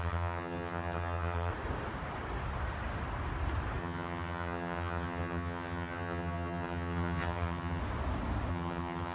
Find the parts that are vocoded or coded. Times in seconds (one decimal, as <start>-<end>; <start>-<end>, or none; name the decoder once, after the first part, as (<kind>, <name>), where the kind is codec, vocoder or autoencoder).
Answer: 0.0-1.5 (vocoder, HiFi-GAN); 3.8-7.8; 8.5-9.1